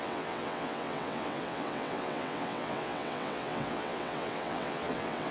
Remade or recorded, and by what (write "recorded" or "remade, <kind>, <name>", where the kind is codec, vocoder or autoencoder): remade, vocoder, WaveNeXt